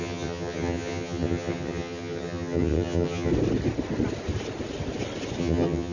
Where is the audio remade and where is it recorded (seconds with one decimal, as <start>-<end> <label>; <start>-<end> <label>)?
0.0-3.3 remade; 3.3-5.4 recorded; 5.4-5.9 remade